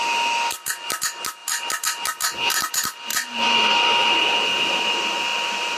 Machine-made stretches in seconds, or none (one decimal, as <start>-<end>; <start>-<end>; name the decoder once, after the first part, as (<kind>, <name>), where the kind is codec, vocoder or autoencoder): none